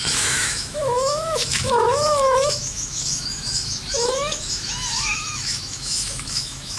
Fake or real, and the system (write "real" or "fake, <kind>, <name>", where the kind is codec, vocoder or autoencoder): fake, autoencoder, DAC-VAE